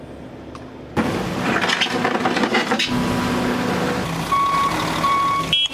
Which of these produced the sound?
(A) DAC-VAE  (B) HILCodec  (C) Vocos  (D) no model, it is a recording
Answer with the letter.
D